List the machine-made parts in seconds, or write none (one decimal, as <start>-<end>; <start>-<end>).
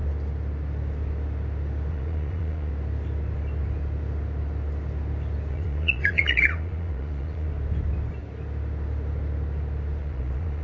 1.9-2.7; 5.5-7.5; 10.0-10.6